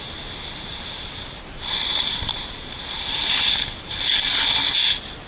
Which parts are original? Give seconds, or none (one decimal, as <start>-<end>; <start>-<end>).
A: 0.0-0.7; 3.3-5.3